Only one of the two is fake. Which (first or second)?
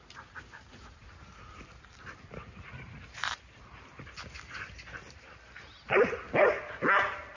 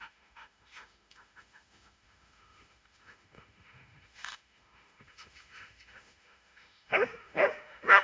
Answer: second